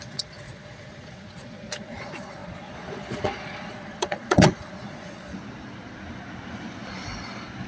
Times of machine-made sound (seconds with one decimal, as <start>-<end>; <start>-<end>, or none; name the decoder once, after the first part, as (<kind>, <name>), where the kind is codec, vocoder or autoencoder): 0.0-5.3 (vocoder, Vocos)